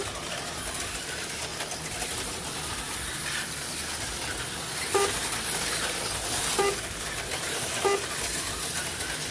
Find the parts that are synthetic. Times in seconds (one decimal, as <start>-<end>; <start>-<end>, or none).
none